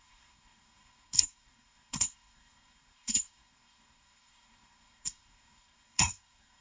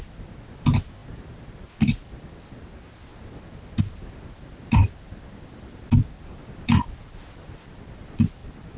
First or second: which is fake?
first